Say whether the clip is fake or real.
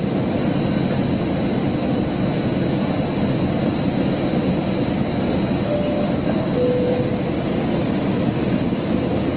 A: real